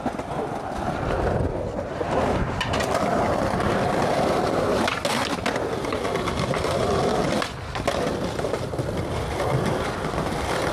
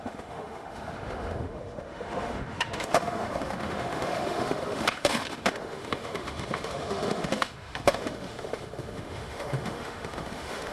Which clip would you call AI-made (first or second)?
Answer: second